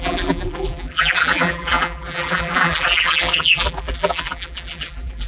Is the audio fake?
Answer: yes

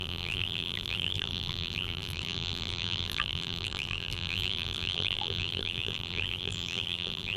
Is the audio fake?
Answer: yes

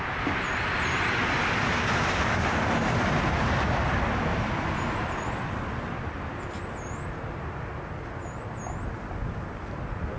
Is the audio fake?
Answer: no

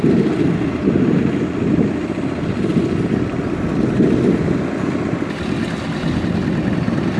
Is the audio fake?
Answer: no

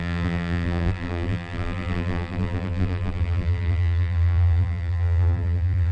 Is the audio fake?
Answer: yes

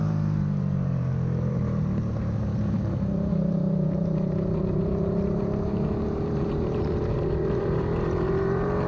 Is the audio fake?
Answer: yes